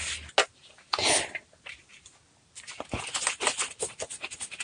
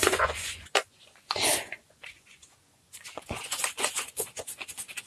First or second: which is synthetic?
second